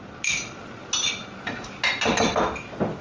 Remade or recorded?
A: recorded